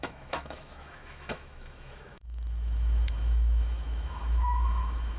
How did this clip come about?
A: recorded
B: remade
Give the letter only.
B